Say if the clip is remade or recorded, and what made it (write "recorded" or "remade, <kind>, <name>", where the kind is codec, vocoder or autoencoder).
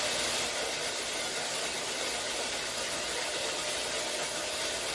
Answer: recorded